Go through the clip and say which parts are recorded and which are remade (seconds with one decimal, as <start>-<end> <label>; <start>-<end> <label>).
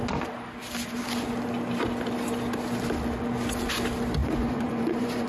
0.0-4.2 recorded; 4.2-5.3 remade